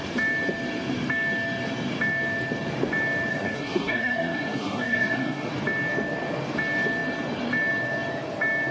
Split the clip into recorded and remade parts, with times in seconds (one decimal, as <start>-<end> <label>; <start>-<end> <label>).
0.0-3.3 recorded; 3.3-5.5 remade; 5.5-8.7 recorded